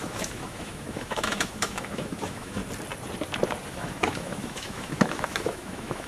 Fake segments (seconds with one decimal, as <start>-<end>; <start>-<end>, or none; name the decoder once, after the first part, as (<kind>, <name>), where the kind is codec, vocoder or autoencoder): 0.0-2.6 (autoencoder, DAC-VAE); 3.7-6.1